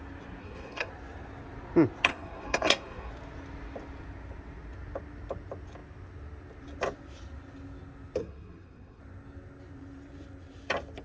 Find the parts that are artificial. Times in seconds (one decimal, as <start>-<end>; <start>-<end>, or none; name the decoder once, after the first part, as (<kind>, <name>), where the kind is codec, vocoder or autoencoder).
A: 0.4-0.9 (codec, SNAC); 2.1-3.1; 8.2-9.0